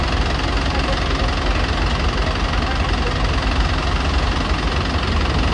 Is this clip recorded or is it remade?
recorded